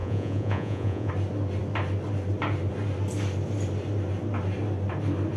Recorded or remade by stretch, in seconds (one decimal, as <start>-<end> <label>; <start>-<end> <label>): 0.0-1.1 remade; 1.1-5.4 recorded